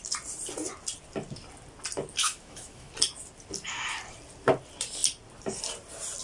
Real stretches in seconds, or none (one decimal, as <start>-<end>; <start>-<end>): 0.0-2.2; 2.9-6.2